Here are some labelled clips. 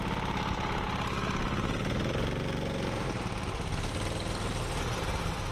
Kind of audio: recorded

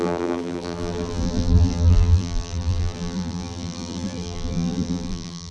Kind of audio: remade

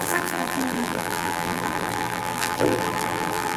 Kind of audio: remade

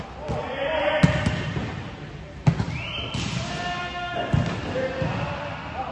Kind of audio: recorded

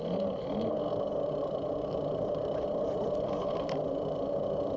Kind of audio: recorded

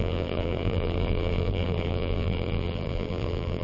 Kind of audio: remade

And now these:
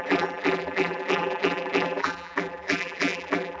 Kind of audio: remade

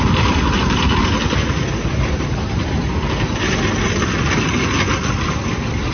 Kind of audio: recorded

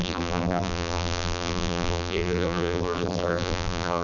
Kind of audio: remade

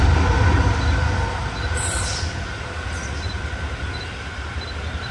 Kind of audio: recorded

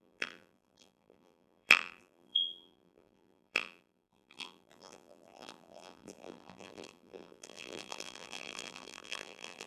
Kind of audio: remade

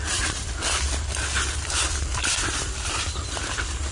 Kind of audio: remade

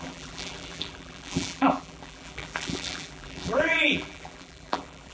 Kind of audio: remade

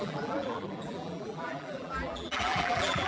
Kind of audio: remade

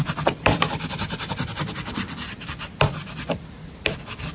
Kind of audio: remade